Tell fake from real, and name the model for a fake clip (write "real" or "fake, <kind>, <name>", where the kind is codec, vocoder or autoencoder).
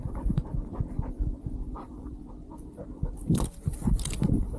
fake, vocoder, BigVGAN v2